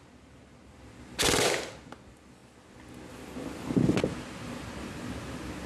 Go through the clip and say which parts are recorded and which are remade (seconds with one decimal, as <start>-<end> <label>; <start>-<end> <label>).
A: 0.0-5.7 recorded